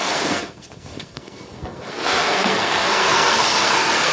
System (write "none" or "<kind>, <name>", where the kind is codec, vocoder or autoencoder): codec, SNAC